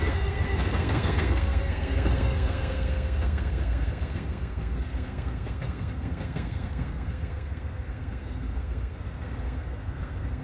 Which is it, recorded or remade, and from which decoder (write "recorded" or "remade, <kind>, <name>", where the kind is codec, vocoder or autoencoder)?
remade, codec, SNAC